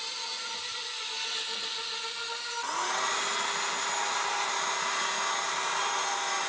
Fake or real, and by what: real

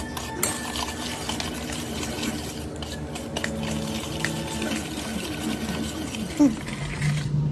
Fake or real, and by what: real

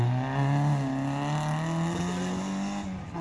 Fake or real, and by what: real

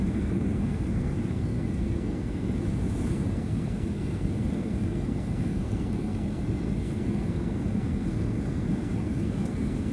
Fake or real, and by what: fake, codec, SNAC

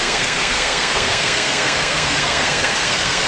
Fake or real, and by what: fake, codec, SNAC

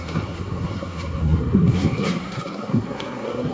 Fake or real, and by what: fake, codec, SNAC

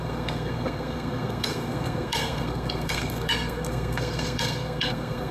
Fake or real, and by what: fake, codec, SNAC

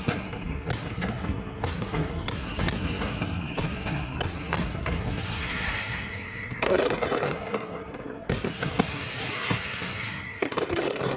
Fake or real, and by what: fake, codec, SNAC